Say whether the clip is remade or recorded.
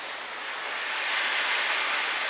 recorded